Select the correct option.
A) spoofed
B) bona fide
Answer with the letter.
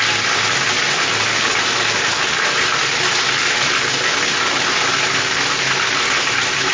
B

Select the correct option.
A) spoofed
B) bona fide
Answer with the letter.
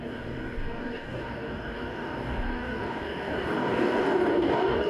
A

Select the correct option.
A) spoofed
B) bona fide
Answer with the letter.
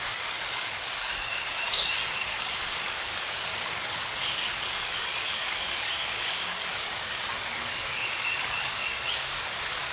A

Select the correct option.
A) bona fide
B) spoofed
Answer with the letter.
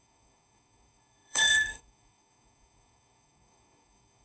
B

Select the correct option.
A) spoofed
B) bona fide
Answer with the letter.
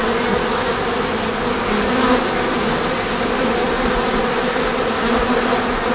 B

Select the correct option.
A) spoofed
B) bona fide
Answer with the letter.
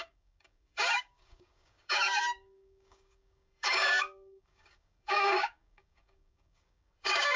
A